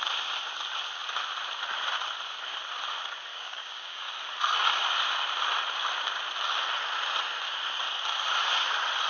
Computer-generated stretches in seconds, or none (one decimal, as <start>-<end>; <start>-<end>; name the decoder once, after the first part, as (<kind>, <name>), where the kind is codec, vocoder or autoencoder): 3.3-4.1 (codec, DAC)

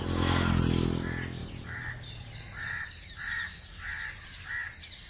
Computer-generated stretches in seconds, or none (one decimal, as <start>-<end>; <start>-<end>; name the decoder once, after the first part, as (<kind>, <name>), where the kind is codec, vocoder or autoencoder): 1.4-4.5 (vocoder, BigVGAN v2)